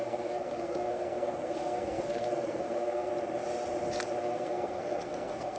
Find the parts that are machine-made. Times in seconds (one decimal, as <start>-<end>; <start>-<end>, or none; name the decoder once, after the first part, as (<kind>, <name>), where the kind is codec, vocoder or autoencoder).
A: 0.0-3.1 (codec, SNAC); 4.2-5.6